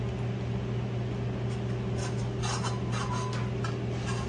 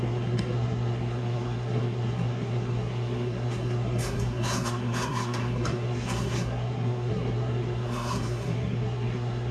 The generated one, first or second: second